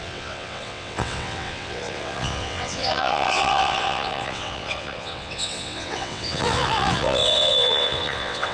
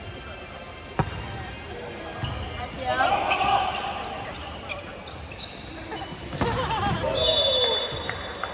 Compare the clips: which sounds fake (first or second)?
first